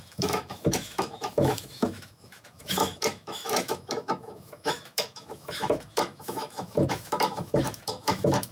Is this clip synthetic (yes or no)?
yes